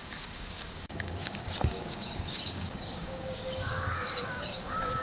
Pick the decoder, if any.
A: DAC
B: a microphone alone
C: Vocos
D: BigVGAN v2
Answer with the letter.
A